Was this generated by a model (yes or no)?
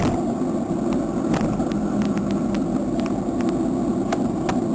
no